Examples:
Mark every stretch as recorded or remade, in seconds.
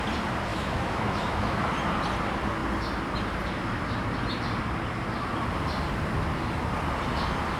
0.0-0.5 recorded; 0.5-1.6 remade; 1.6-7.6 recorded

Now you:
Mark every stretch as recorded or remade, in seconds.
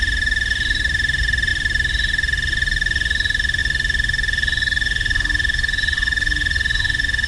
0.0-7.3 recorded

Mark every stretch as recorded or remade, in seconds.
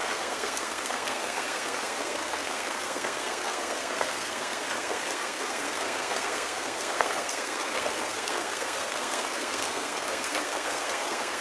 0.0-11.4 remade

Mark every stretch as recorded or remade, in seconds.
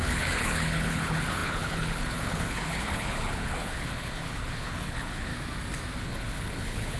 0.0-5.3 remade; 5.3-6.0 recorded; 6.0-7.0 remade